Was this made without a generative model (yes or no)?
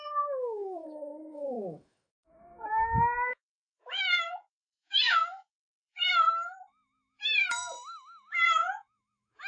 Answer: no